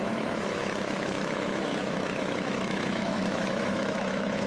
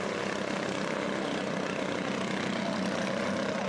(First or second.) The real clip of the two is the second